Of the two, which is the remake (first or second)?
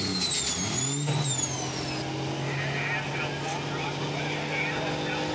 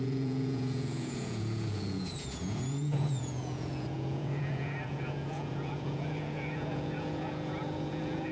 second